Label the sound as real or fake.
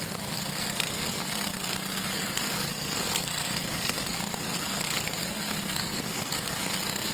fake